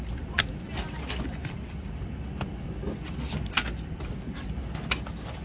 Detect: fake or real fake